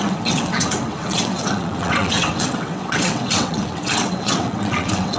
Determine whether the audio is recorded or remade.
remade